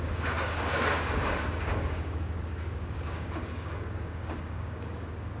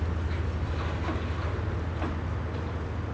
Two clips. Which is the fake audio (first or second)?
first